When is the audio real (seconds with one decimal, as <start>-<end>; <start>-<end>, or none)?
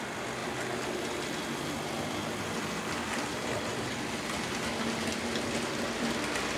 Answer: 0.0-6.6